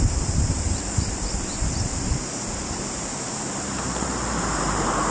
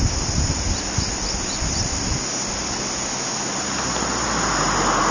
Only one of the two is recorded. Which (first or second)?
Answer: second